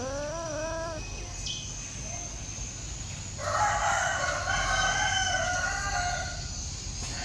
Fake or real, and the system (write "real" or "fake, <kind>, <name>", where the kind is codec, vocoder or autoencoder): real